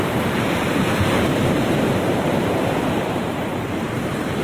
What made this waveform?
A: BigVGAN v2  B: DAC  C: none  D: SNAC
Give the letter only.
A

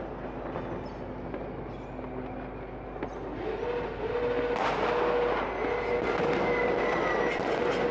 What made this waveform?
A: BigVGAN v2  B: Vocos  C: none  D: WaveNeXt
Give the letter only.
C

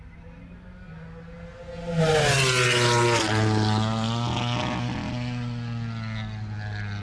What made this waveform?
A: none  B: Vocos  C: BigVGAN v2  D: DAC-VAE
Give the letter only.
A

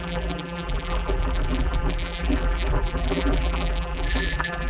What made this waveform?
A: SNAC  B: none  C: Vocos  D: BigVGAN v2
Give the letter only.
D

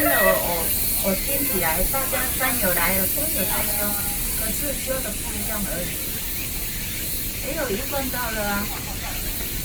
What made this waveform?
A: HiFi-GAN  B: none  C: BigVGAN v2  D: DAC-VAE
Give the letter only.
B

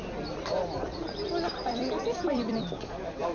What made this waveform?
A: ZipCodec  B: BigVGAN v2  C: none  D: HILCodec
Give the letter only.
B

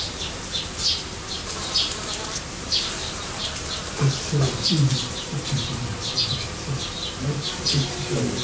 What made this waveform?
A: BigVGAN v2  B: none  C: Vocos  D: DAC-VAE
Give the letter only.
A